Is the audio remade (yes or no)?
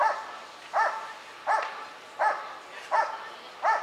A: no